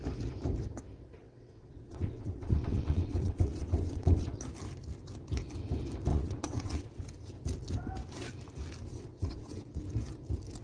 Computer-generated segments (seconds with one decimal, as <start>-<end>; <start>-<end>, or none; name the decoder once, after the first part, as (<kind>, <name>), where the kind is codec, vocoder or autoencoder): 1.2-4.4 (vocoder, WaveNeXt); 6.1-7.0; 8.9-9.8